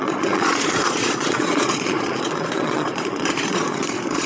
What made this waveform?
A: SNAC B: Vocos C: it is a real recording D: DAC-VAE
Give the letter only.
B